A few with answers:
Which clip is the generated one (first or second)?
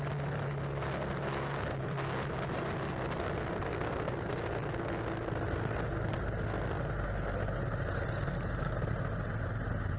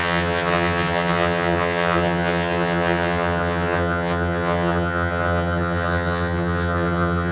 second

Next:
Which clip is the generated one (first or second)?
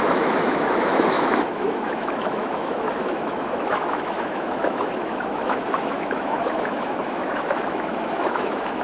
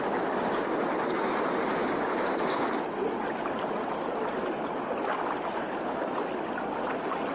first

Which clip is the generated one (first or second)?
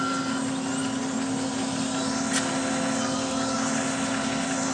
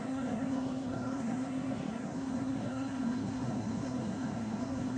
second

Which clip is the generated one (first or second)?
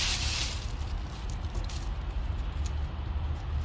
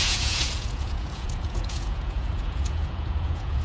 second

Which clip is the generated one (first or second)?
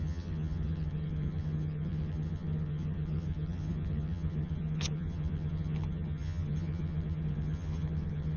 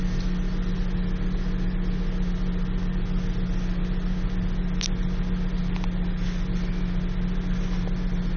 first